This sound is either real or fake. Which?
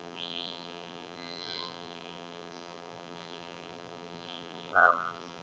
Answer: fake